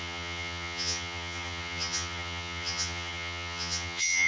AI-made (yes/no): yes